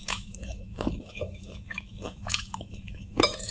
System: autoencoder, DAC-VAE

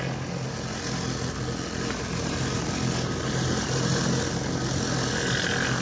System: none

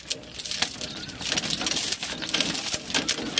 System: none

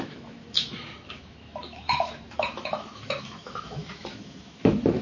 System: autoencoder, DAC-VAE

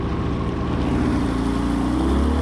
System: none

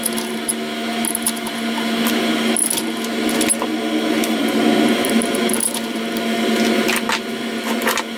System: none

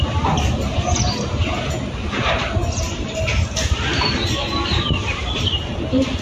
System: none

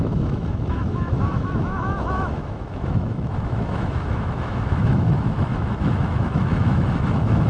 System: autoencoder, DAC-VAE